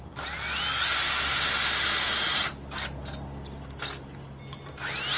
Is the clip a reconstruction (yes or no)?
no